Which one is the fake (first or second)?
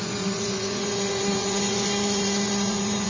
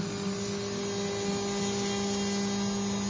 first